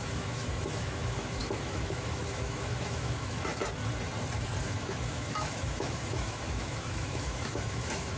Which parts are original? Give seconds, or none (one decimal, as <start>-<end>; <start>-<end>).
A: 3.6-4.6